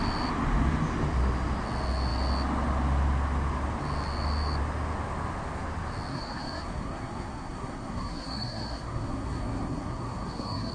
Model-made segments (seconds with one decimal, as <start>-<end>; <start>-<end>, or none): 6.1-10.7

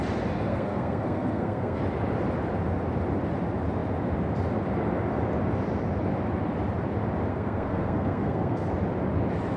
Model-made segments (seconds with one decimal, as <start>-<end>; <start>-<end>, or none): 0.5-1.8; 7.3-8.7

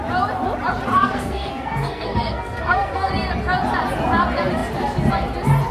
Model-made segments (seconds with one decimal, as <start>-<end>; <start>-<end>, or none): 0.9-3.1